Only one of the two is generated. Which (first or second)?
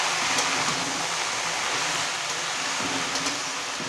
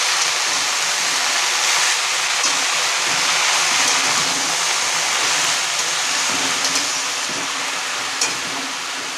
first